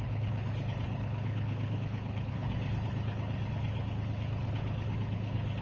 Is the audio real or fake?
fake